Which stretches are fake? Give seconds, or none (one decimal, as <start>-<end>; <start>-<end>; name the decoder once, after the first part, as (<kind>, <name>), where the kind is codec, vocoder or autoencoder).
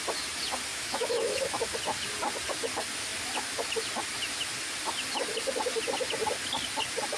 0.7-1.6 (autoencoder, DAC-VAE)